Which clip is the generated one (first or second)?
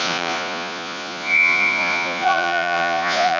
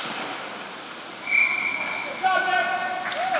first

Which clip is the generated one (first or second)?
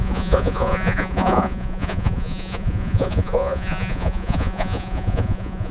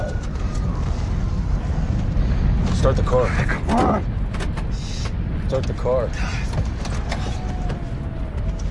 first